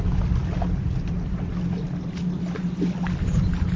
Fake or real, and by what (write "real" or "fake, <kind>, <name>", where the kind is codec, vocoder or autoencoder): real